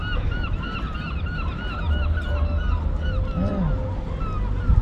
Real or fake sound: real